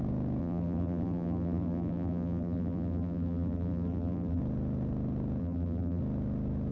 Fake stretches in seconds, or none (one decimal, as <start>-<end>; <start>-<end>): 0.4-4.4; 5.4-6.0